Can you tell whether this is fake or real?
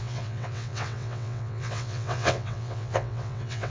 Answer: fake